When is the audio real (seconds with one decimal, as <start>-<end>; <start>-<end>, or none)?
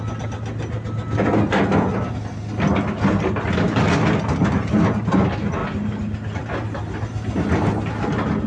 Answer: 0.0-8.5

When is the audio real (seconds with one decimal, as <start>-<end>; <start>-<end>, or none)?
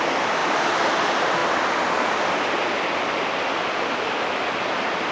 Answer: 0.0-5.1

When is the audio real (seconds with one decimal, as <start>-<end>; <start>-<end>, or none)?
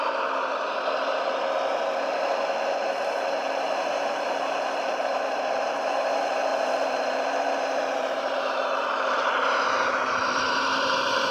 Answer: 0.5-2.9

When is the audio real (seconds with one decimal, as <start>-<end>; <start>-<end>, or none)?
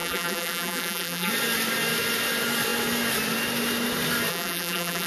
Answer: 1.3-4.3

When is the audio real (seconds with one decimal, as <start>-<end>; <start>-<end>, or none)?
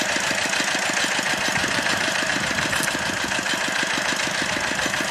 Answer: 0.0-1.6; 2.3-5.1